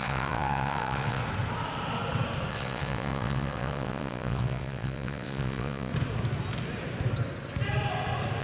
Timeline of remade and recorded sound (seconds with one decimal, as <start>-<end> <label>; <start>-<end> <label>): 0.0-1.2 remade; 1.2-2.5 recorded; 2.5-5.9 remade; 5.9-8.4 recorded